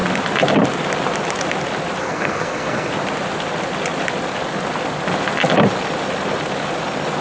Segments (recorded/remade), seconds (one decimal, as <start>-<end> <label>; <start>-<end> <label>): 0.0-2.0 recorded; 2.0-2.9 remade; 2.9-7.2 recorded